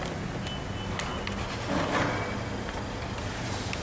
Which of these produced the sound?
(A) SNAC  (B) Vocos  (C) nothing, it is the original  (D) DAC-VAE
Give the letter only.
C